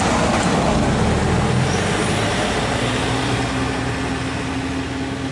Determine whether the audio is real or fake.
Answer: real